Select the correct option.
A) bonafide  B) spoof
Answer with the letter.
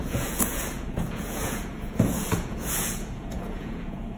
B